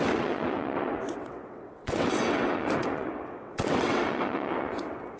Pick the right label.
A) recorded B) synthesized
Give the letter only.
B